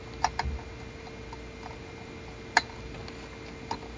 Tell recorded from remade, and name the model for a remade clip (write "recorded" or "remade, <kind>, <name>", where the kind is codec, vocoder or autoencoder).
recorded